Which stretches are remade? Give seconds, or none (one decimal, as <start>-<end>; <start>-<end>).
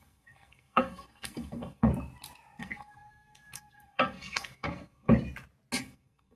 0.0-1.9; 2.6-5.1; 5.8-6.4